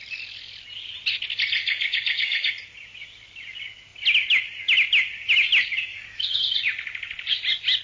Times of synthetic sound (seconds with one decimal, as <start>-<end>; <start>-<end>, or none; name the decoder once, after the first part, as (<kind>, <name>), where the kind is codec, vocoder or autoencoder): 1.6-2.5 (codec, DAC); 5.9-6.4